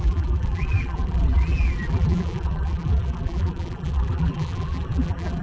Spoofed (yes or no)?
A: yes